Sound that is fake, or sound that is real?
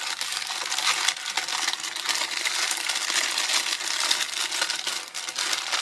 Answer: real